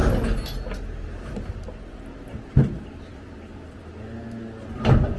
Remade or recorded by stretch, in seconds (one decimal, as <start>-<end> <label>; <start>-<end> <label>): 0.0-3.1 recorded; 3.1-3.8 remade; 3.8-5.2 recorded